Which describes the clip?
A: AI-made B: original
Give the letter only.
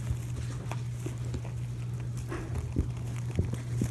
B